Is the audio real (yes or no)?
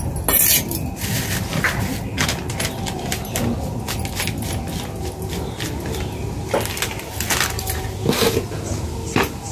yes